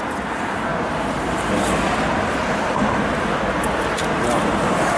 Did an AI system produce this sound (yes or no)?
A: no